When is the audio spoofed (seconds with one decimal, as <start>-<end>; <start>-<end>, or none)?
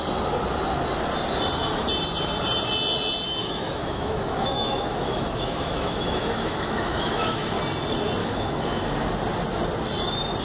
3.4-7.6; 8.2-8.8